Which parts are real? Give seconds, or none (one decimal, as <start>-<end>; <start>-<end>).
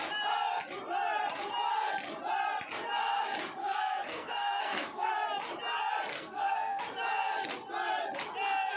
0.0-3.6; 5.1-6.1; 6.8-8.8